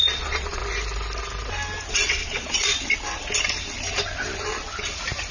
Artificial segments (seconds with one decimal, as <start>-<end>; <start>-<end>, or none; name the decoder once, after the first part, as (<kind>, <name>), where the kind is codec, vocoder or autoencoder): 0.0-0.6 (vocoder, Vocos); 1.9-2.7